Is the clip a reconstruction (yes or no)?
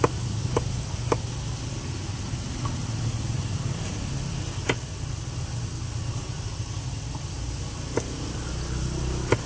no